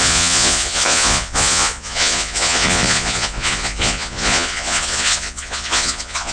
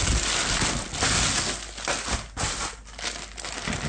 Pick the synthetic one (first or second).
first